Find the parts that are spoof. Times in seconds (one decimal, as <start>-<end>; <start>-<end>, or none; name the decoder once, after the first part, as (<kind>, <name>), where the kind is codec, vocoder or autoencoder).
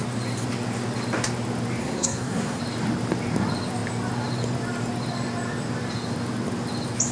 1.8-2.6 (codec, SNAC)